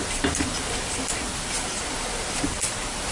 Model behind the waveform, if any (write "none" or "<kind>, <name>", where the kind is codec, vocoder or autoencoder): vocoder, BigVGAN v2